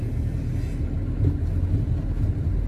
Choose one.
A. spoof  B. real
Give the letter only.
B